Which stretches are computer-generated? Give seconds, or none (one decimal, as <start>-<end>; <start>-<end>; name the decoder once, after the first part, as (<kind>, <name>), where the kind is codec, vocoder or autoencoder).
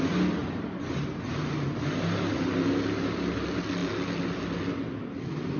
0.4-1.4 (vocoder, BigVGAN v2)